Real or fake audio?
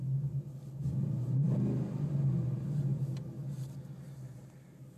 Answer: real